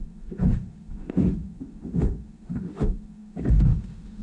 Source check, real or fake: fake